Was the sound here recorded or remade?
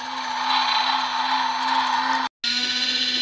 recorded